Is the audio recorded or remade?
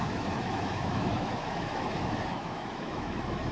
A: remade